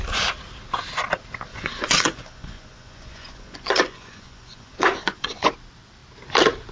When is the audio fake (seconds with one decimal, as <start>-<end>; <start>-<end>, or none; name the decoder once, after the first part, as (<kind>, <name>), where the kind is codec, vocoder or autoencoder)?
1.5-5.5 (vocoder, Vocos)